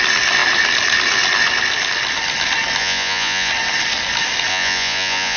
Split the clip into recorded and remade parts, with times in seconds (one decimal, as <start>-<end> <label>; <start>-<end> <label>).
0.0-2.8 recorded; 2.8-3.5 remade; 3.5-4.5 recorded; 4.5-5.4 remade

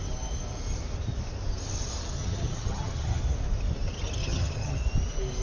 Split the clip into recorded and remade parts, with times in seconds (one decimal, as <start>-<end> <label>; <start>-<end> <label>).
0.0-2.2 recorded; 2.2-3.2 remade; 3.2-4.2 recorded; 4.2-4.8 remade; 4.8-5.4 recorded

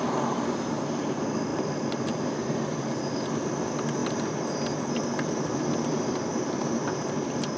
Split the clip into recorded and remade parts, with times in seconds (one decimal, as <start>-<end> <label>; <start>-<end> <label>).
0.0-7.6 recorded

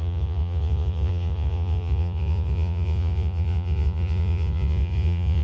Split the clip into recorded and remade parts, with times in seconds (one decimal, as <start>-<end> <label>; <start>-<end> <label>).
0.0-5.4 remade

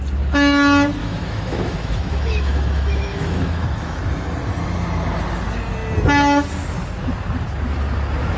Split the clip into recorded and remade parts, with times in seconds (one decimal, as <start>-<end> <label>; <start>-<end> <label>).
0.0-1.0 recorded; 1.0-4.0 remade; 4.0-8.4 recorded

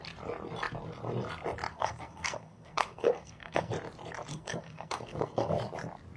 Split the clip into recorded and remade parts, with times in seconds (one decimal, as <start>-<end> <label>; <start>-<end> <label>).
0.0-1.7 recorded; 1.7-3.7 remade; 3.7-4.3 recorded; 4.3-5.5 remade; 5.5-6.2 recorded